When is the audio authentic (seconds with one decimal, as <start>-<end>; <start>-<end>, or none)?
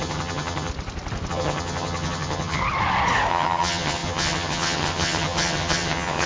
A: 0.7-1.3; 2.6-3.3